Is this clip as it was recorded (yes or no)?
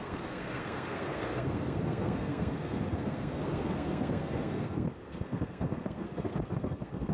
no